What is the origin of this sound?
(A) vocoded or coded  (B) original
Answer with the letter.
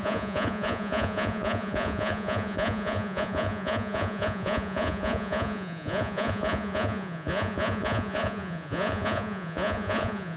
A